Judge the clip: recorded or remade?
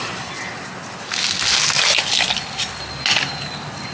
recorded